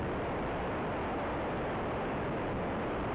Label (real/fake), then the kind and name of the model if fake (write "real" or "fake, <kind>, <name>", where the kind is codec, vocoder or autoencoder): real